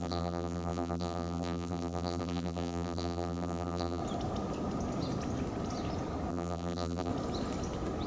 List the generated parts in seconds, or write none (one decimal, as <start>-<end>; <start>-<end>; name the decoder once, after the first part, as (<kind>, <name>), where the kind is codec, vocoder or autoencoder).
0.0-4.0 (vocoder, BigVGAN v2); 6.3-7.1